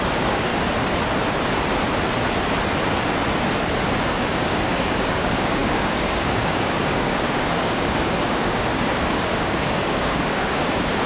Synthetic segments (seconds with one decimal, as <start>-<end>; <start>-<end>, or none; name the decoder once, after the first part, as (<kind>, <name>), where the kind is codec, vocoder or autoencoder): 0.0-0.5 (codec, DAC); 4.0-11.1